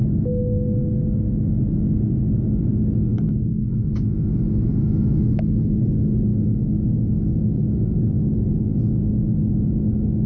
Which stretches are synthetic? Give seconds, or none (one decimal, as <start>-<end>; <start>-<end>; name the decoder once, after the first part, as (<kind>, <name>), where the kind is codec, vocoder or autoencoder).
3.1-5.6 (autoencoder, DAC-VAE); 6.3-9.9